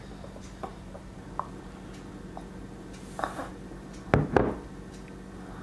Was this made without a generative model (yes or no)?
yes